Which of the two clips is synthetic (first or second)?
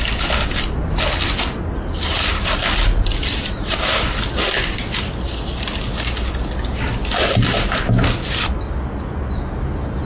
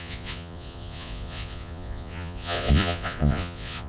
second